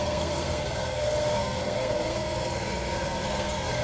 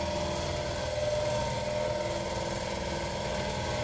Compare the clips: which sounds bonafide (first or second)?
second